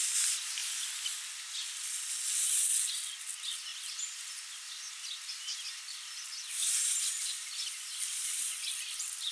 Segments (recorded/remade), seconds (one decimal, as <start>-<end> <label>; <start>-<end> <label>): 0.0-9.3 recorded